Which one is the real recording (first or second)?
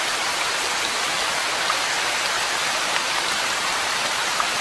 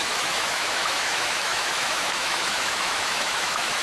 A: first